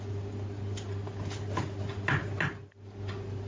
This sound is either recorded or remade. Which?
remade